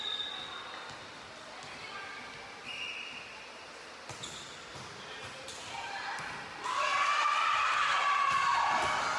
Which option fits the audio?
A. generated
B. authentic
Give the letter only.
B